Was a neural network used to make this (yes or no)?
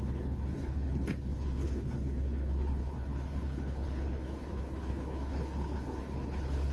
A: yes